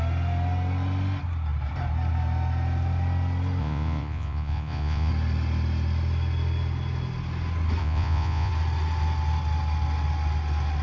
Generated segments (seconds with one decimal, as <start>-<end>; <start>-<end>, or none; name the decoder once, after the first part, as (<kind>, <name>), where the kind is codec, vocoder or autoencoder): 3.6-5.1 (vocoder, Vocos); 7.8-8.5